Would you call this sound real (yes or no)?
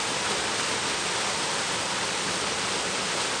yes